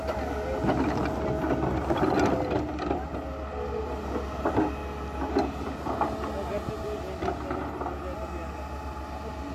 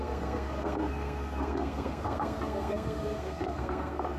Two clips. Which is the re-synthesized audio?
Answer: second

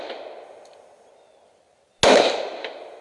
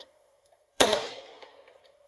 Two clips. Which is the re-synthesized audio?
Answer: second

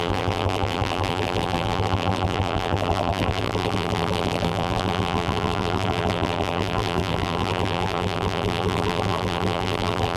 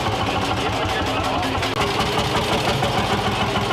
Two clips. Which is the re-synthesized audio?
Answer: first